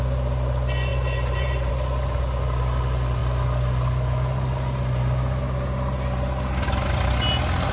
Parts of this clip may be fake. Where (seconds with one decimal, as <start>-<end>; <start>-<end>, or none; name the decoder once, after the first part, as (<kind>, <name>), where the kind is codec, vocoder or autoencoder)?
0.9-1.7 (vocoder, BigVGAN v2)